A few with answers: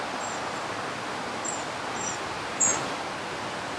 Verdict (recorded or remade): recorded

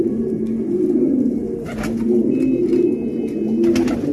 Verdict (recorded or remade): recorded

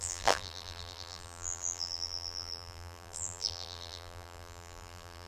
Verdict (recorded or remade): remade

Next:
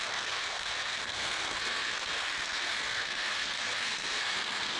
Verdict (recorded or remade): remade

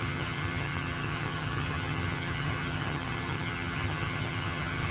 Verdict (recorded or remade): remade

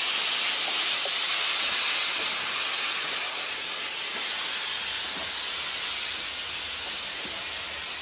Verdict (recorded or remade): recorded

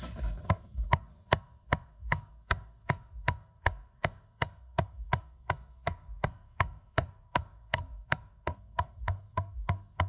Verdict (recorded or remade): remade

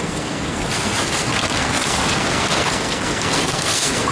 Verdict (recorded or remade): remade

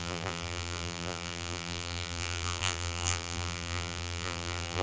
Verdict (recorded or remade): remade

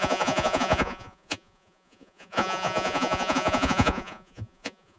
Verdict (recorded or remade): remade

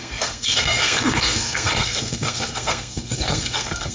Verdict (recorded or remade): remade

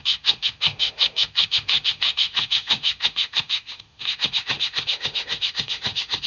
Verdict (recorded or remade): remade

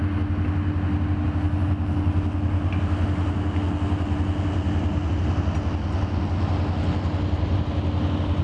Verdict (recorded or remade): recorded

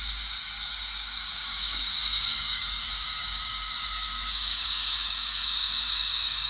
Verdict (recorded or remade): remade